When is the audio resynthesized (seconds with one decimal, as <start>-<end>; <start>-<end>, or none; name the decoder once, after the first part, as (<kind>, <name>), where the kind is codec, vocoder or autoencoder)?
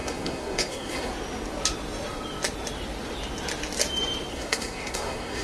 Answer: 0.0-1.1 (codec, SNAC); 4.3-5.4